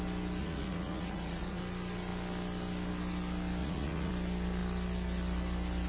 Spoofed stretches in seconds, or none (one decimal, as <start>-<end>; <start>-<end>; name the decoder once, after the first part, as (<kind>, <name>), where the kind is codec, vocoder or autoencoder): 0.4-1.6 (vocoder, Vocos); 3.6-4.1